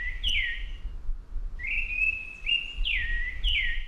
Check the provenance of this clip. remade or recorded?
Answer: recorded